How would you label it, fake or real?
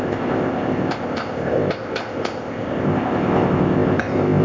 fake